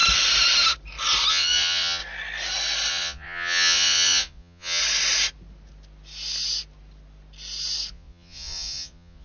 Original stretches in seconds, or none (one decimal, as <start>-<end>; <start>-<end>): 0.0-1.3; 2.0-2.9; 4.8-7.9